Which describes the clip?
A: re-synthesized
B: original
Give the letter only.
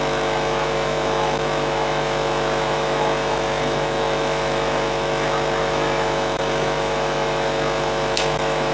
A